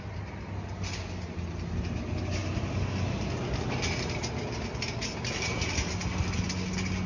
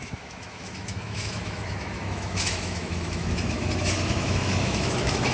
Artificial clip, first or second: second